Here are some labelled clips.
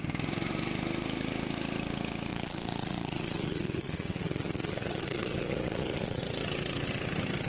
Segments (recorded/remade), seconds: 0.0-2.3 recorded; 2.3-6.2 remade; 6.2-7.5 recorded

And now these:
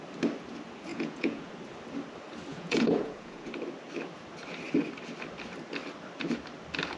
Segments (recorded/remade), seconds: 0.0-0.9 recorded; 0.9-1.5 remade; 1.5-2.5 recorded; 2.5-3.5 remade; 3.5-7.0 recorded

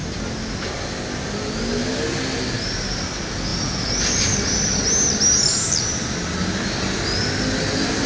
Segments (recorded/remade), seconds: 0.0-8.1 recorded

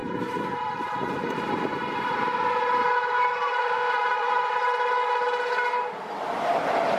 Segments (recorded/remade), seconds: 0.0-0.7 remade; 0.7-3.6 recorded; 3.6-4.3 remade; 4.3-7.0 recorded

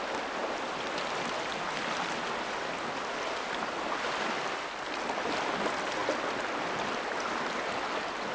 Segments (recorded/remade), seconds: 0.0-8.3 recorded

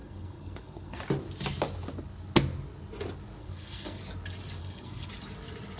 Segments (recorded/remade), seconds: 0.0-1.0 remade; 1.0-3.4 recorded; 3.4-4.0 remade; 4.0-4.6 recorded; 4.6-5.1 remade; 5.1-5.8 recorded